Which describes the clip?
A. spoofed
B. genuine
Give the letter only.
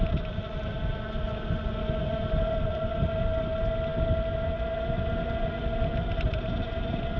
B